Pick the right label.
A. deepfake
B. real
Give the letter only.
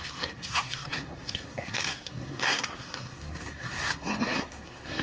A